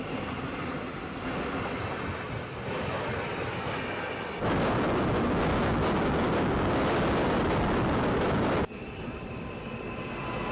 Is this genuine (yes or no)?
yes